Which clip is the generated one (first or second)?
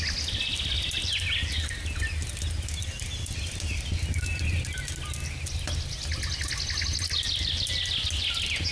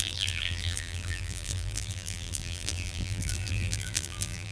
second